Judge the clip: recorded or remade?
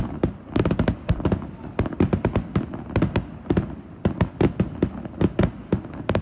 recorded